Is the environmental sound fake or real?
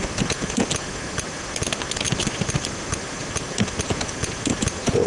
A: real